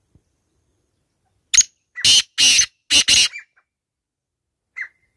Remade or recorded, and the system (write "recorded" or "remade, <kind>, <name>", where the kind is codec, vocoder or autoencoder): recorded